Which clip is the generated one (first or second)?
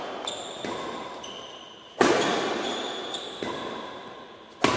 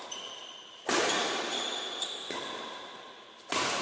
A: second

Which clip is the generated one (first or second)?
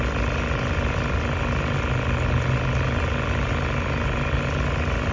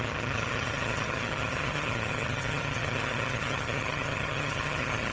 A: second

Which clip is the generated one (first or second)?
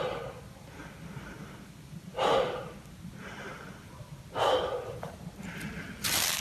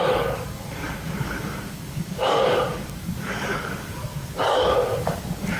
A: second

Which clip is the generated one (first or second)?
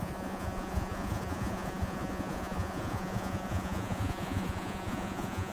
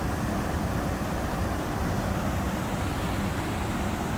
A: first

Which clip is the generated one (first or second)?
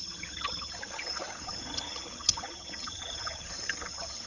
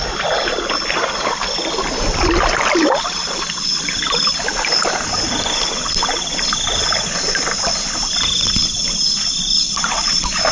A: first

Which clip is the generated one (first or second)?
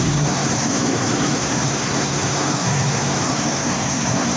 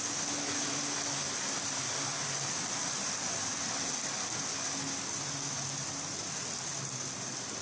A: first